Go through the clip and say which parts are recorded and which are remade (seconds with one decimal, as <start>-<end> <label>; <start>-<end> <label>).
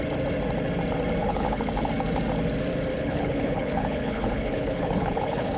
0.0-1.2 recorded; 1.2-1.9 remade; 1.9-2.9 recorded; 2.9-5.6 remade